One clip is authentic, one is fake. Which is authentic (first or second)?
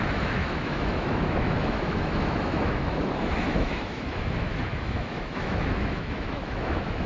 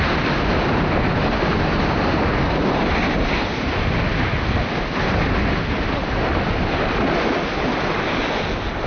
second